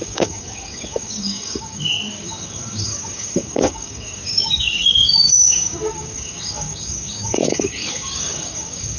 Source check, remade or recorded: remade